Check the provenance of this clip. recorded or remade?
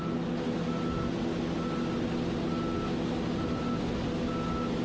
recorded